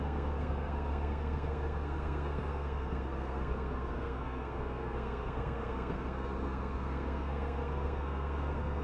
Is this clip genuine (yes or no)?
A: no